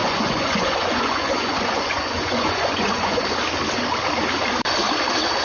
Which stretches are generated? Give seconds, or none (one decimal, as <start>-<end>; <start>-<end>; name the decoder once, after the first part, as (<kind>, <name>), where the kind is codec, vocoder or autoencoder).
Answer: 0.0-3.2 (vocoder, Vocos)